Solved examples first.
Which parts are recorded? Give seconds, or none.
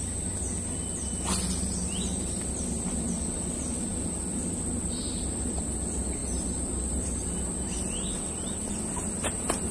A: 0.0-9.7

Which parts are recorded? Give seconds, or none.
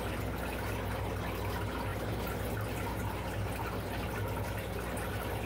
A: 0.0-5.5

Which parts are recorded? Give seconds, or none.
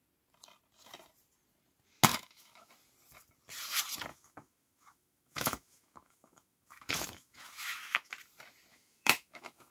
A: 0.0-2.1; 2.7-4.1; 8.1-8.7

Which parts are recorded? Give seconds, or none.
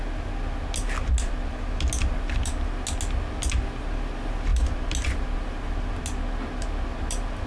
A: 0.0-7.5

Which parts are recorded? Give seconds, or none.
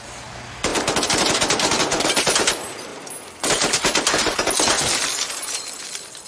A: 0.0-6.3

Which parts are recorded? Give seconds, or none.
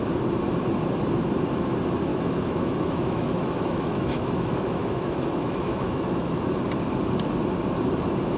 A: 0.0-2.1; 6.5-8.4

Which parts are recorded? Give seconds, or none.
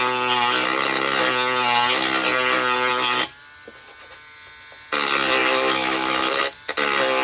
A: 0.0-5.4; 6.4-7.2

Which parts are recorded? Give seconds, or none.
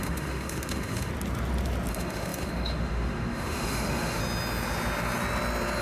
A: 1.1-1.9; 4.2-5.8